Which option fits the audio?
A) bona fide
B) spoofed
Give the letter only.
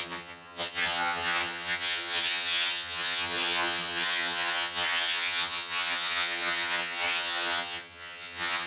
B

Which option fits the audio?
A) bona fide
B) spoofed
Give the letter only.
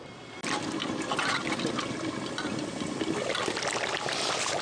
A